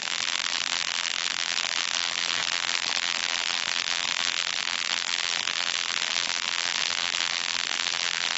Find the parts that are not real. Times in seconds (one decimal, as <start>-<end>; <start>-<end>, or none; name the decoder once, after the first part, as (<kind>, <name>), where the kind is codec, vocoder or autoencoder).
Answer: 0.0-8.4 (vocoder, BigVGAN v2)

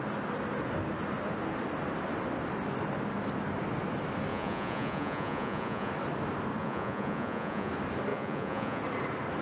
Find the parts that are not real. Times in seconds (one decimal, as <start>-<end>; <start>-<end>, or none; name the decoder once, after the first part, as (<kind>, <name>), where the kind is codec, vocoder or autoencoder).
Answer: 4.3-5.9 (vocoder, Vocos); 6.6-7.7; 8.1-8.8

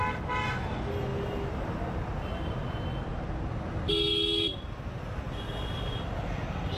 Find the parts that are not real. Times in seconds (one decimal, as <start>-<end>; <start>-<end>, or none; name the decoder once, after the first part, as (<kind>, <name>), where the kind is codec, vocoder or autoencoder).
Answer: none

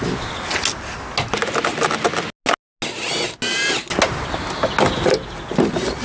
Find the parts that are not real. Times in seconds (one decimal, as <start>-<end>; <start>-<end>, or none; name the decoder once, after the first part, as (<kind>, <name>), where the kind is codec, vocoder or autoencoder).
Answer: none